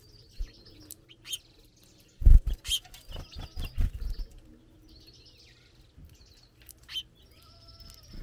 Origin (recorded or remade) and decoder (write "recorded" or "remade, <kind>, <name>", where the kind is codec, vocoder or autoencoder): recorded